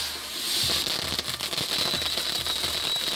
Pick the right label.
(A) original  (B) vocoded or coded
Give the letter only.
A